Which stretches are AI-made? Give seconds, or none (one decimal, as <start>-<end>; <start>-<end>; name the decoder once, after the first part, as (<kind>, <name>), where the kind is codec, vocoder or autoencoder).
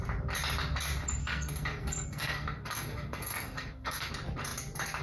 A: 1.2-4.1 (codec, SNAC)